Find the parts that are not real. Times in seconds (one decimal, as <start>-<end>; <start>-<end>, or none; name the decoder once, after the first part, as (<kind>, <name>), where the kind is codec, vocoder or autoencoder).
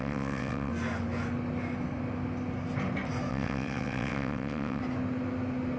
0.0-0.7 (vocoder, WaveNeXt); 3.3-4.8